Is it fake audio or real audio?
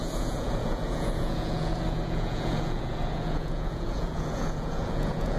fake